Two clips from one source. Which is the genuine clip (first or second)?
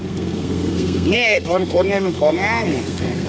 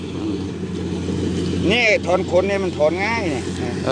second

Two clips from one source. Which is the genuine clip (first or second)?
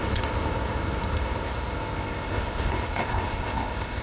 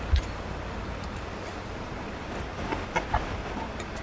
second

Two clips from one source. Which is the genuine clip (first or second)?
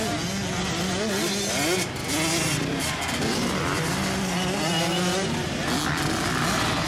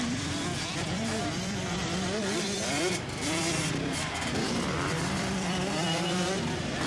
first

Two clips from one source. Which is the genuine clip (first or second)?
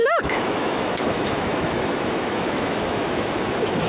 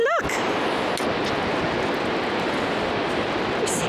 second